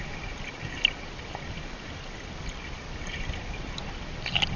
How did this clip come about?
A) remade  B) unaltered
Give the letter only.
B